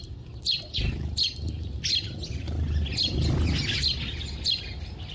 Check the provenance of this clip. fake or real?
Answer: real